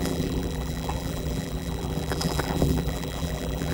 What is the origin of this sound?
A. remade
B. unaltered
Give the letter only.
A